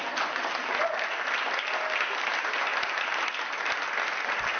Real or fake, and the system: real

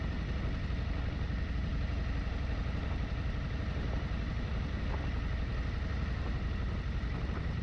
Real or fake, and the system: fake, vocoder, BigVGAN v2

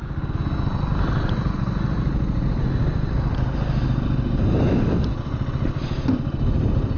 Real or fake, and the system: real